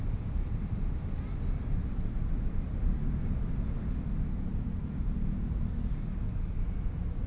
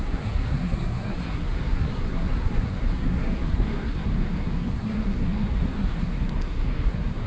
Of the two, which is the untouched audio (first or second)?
first